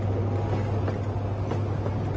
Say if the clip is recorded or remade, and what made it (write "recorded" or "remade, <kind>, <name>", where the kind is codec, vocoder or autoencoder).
recorded